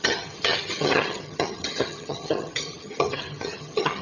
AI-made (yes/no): yes